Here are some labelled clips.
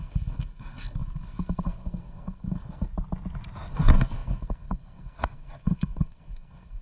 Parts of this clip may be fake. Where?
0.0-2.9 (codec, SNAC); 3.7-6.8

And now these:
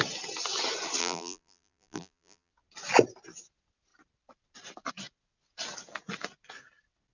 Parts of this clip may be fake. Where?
1.0-2.5 (vocoder, BigVGAN v2)

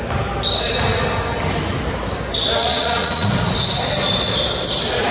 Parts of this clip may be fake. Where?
2.6-3.3 (vocoder, Vocos)